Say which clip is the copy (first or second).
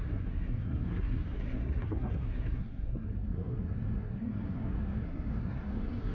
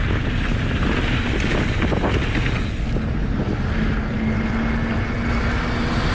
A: first